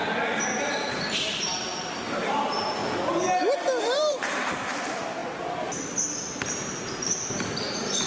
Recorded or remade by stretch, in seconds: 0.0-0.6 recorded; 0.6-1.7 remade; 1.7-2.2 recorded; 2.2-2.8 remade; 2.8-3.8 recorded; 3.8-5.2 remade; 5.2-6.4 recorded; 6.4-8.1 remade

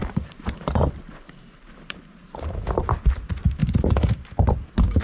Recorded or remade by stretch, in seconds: 0.0-3.0 remade; 3.0-3.6 recorded; 3.6-4.3 remade; 4.3-5.0 recorded

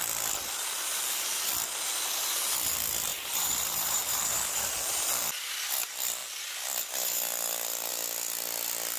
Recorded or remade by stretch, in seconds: 0.0-3.1 recorded; 3.1-4.7 remade; 4.7-9.0 recorded

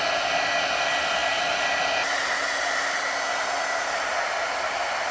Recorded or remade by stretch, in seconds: 0.0-5.1 recorded

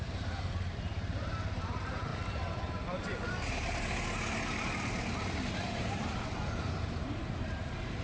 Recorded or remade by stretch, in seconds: 0.0-2.1 remade; 2.1-5.5 recorded; 5.5-8.0 remade

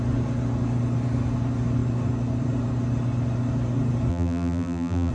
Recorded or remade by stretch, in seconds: 0.0-4.1 recorded; 4.1-5.1 remade